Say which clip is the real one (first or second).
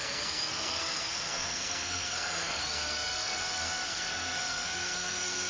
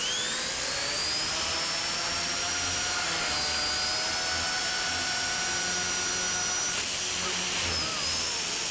second